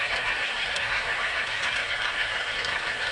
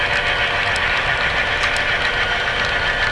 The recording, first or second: second